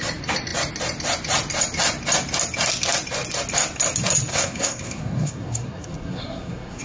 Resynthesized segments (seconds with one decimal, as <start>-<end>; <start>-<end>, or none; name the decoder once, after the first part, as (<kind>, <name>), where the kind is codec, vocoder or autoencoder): 4.3-6.8 (codec, SNAC)